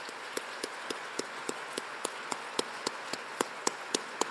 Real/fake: fake